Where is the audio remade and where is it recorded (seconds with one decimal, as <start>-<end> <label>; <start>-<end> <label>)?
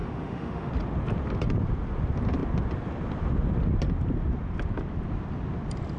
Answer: 0.0-0.7 remade; 0.7-6.0 recorded